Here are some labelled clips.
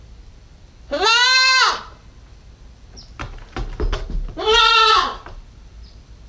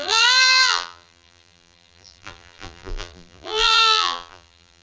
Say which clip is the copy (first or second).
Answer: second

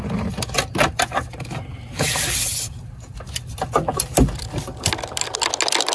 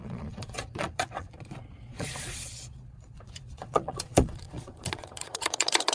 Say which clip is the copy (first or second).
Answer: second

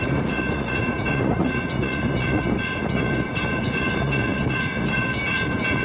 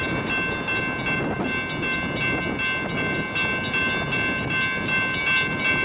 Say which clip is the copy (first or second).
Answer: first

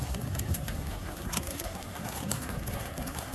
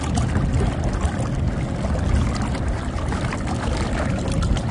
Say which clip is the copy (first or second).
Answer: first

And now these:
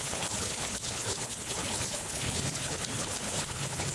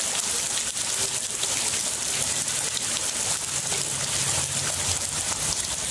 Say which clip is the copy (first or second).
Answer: first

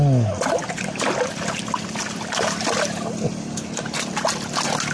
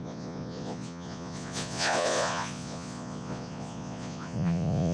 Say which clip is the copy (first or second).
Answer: second